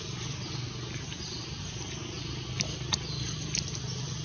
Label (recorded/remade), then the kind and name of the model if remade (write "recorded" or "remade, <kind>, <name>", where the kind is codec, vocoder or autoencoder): recorded